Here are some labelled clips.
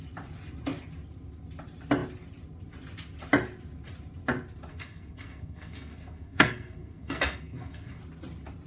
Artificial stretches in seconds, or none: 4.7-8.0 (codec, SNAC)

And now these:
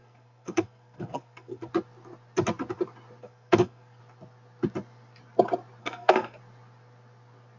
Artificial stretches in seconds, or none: 0.0-1.7 (codec, SNAC); 3.2-4.0; 5.8-6.4

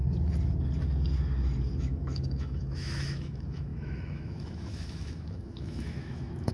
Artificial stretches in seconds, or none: 1.8-6.5 (autoencoder, DAC-VAE)

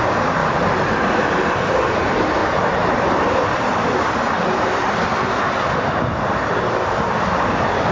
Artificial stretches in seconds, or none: 0.4-1.5 (vocoder, BigVGAN v2)

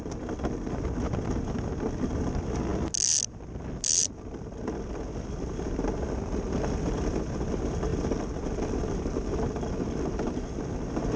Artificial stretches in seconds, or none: none

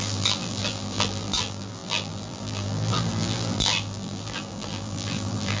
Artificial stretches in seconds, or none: 0.0-5.6 (vocoder, BigVGAN v2)